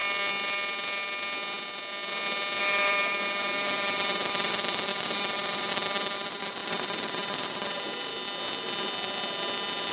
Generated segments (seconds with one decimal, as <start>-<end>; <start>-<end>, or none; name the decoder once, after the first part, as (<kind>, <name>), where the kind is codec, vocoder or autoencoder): 2.6-8.1 (vocoder, BigVGAN v2)